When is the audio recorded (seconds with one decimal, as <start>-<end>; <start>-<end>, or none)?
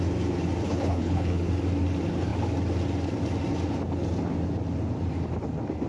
0.0-0.6; 1.5-5.9